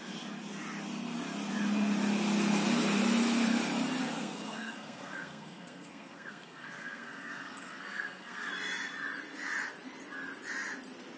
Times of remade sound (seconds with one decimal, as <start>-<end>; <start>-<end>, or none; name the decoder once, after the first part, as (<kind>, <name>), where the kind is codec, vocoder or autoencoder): 4.0-8.5 (codec, SNAC)